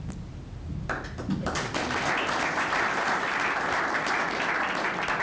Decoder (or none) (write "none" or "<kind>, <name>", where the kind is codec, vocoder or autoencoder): none